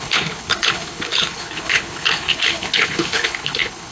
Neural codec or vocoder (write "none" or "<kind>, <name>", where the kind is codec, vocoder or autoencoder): codec, HILCodec